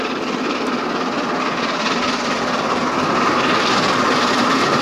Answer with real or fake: real